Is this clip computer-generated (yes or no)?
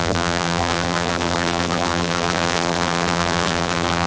yes